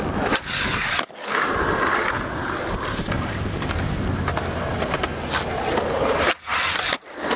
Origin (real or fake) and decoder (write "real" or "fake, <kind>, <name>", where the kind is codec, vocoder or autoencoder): real